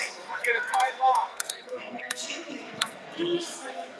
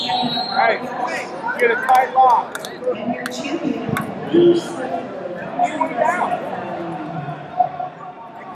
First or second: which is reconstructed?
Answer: first